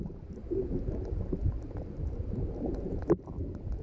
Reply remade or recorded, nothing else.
remade